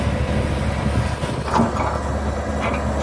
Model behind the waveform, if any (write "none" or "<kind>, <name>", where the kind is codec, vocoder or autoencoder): none